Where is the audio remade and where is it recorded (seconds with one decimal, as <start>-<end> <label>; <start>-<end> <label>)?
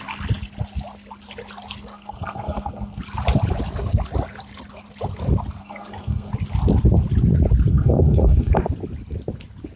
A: 0.0-1.9 recorded; 1.9-3.0 remade; 3.0-5.6 recorded; 5.6-6.3 remade; 6.3-7.7 recorded; 7.7-8.5 remade; 8.5-9.8 recorded